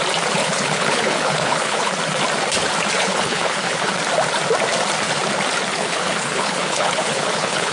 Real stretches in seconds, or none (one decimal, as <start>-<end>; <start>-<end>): 0.0-0.4; 1.9-3.0; 3.9-5.7